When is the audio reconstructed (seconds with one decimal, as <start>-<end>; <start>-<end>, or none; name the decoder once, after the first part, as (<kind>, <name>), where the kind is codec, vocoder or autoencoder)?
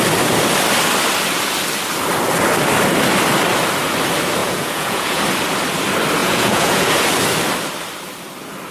4.4-5.2 (vocoder, Vocos); 6.2-6.9